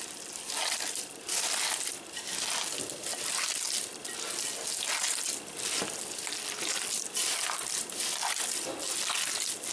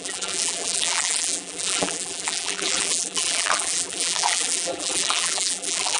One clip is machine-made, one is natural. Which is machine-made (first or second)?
second